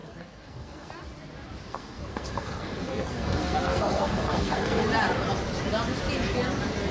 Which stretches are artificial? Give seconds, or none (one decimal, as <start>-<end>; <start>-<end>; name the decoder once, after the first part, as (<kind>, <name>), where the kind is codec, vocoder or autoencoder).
0.0-0.9 (codec, SNAC); 1.7-4.9

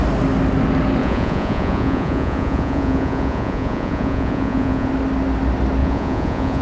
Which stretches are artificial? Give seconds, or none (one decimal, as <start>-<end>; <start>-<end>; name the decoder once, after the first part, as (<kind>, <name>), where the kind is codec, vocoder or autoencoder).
1.0-4.9 (vocoder, Vocos); 5.8-6.6

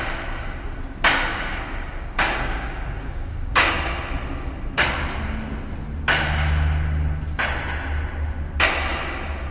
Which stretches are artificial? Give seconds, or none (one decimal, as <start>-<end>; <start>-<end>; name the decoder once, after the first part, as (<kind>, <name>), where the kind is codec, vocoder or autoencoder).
1.3-3.7 (codec, DAC)

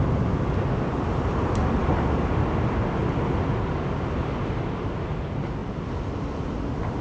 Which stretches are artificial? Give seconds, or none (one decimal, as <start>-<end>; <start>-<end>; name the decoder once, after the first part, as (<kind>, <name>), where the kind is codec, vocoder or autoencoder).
none

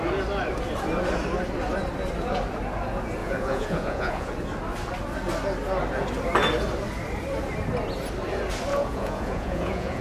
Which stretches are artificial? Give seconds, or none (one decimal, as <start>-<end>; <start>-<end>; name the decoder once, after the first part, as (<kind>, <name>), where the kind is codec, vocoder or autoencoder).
3.2-4.3 (vocoder, Vocos); 8.7-10.0

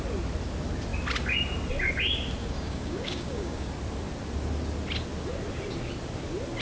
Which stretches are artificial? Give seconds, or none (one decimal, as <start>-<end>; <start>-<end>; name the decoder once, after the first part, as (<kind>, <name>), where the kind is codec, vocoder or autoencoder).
2.4-3.7 (codec, DAC)